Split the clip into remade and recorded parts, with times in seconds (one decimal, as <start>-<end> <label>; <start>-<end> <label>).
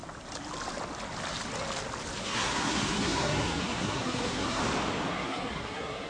0.0-2.2 recorded; 2.2-4.6 remade; 4.6-5.1 recorded; 5.1-6.1 remade